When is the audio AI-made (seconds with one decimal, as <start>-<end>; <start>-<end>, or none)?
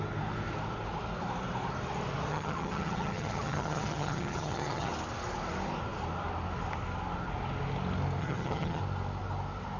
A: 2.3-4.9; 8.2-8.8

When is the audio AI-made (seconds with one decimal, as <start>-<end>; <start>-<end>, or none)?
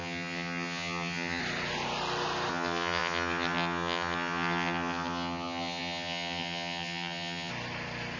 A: 0.0-1.4; 2.5-7.5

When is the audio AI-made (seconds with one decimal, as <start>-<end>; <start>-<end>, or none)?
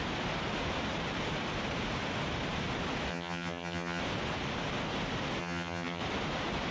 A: 3.1-4.0; 5.4-6.0